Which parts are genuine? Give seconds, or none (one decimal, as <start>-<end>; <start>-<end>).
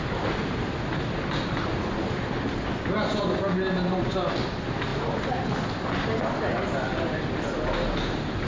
0.0-8.5